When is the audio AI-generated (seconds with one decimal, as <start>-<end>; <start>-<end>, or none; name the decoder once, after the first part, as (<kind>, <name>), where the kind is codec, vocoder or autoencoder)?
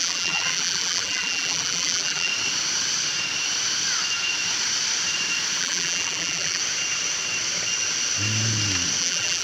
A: 0.0-2.3 (vocoder, BigVGAN v2); 5.6-6.6; 9.0-9.4